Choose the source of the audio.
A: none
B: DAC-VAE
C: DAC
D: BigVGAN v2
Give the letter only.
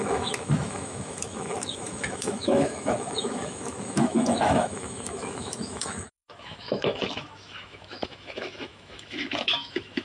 B